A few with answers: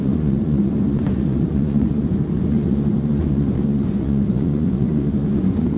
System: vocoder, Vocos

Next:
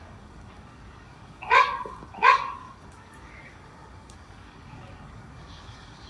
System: codec, DAC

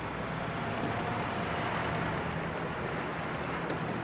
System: none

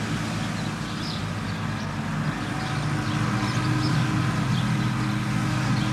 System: none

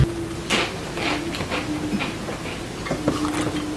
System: none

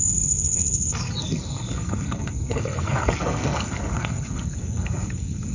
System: codec, SNAC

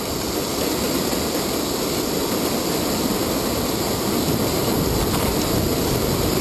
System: none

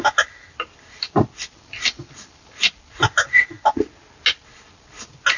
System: none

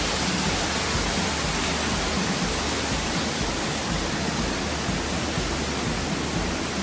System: none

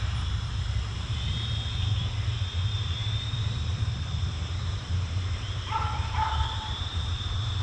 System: vocoder, BigVGAN v2